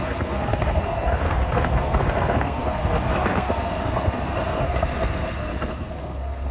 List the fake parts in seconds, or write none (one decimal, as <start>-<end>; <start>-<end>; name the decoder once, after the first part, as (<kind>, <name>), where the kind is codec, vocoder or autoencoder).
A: 0.0-6.5 (codec, SNAC)